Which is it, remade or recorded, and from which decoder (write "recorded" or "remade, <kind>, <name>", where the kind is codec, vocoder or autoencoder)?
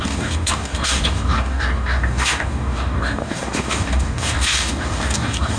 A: remade, codec, DAC